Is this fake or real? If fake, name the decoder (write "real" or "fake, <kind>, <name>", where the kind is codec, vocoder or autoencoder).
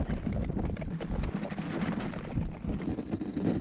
real